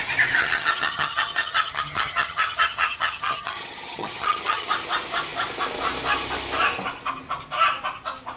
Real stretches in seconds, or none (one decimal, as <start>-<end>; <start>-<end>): 0.0-0.4; 4.7-8.4